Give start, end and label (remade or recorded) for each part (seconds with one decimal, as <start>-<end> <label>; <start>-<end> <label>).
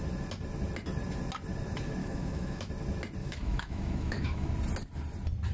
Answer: 0.0-2.0 recorded; 2.0-2.7 remade; 2.7-3.2 recorded; 3.2-4.5 remade; 4.5-5.5 recorded